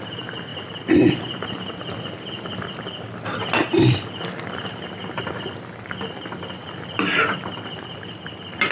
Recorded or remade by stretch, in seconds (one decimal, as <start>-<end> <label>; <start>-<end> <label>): 0.0-8.7 recorded